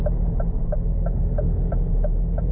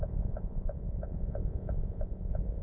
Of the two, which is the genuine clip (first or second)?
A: first